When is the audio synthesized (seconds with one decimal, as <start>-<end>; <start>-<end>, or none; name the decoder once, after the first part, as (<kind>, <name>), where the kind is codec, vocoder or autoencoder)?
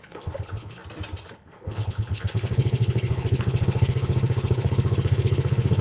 0.0-0.8 (codec, HILCodec); 1.3-5.8